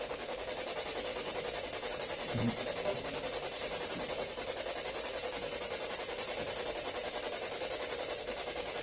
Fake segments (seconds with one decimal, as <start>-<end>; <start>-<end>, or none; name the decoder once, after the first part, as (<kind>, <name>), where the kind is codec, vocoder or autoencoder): none